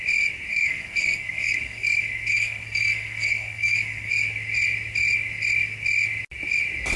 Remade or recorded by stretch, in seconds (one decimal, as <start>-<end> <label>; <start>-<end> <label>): 0.0-0.5 recorded; 0.5-4.1 remade; 4.1-7.0 recorded